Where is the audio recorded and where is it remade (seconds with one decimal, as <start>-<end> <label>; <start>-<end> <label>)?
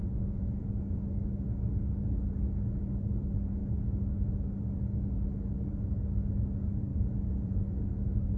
0.0-0.6 remade; 0.6-6.9 recorded; 6.9-7.9 remade; 7.9-8.4 recorded